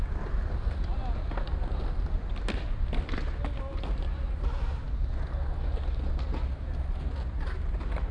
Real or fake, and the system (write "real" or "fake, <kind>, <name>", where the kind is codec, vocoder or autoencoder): real